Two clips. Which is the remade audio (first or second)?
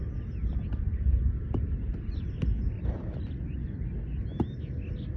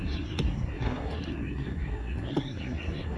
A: second